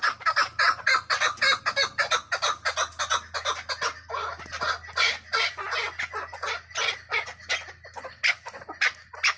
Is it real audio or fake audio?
real